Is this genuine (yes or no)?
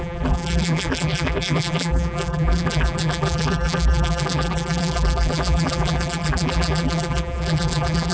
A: no